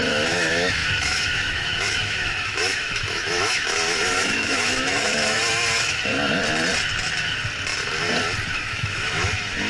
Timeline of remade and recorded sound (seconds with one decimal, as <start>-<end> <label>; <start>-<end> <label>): 0.0-6.1 remade; 6.1-8.5 recorded; 8.5-9.7 remade